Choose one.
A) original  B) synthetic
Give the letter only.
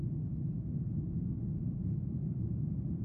A